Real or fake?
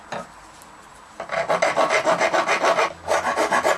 real